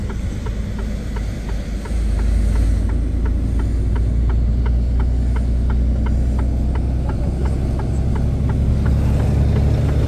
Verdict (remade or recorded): recorded